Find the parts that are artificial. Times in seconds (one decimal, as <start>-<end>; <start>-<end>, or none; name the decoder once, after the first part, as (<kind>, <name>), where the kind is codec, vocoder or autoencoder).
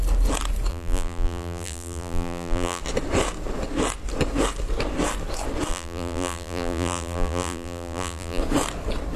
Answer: 0.7-2.8 (vocoder, BigVGAN v2); 5.7-8.4